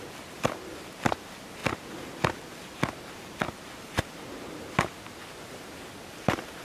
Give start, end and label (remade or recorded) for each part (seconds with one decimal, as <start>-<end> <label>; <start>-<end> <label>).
0.0-6.6 recorded